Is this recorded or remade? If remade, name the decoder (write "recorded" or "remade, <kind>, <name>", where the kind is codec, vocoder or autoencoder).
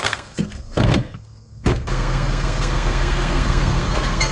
remade, codec, SNAC